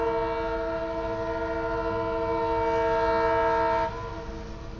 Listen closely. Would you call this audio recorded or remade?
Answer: recorded